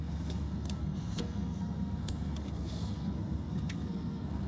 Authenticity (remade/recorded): remade